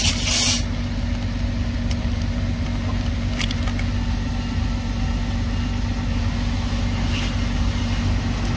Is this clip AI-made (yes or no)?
no